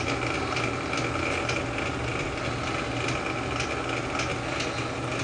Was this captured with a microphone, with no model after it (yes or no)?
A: yes